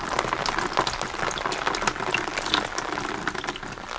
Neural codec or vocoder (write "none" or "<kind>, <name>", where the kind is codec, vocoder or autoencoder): none